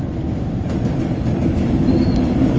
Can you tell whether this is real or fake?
real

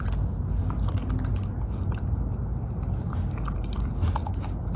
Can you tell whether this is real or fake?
real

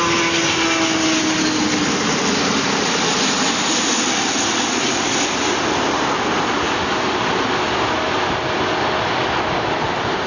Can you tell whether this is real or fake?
real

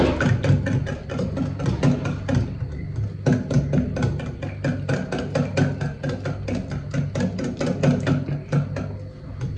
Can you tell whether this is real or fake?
real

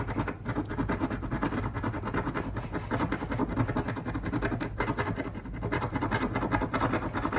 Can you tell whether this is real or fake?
real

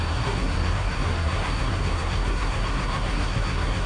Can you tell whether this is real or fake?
fake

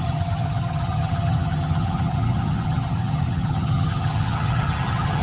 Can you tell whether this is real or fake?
fake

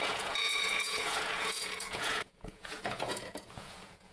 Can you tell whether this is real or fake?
fake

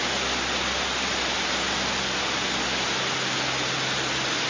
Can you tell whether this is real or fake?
real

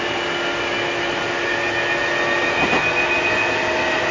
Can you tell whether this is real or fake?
real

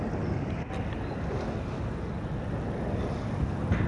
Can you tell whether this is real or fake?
real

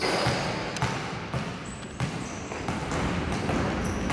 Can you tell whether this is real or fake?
real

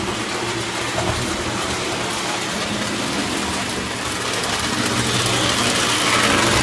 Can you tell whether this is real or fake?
real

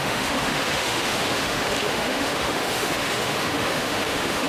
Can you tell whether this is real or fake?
fake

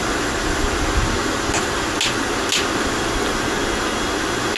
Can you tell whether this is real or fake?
real